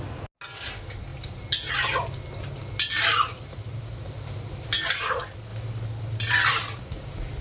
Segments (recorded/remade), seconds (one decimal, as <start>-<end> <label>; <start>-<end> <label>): 0.0-7.4 recorded